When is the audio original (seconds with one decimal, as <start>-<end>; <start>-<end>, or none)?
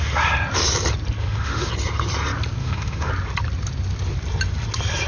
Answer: 0.0-1.2; 1.7-2.6; 3.1-5.1